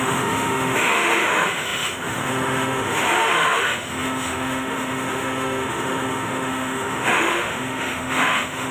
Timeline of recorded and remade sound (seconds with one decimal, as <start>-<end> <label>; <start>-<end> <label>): 0.0-8.7 remade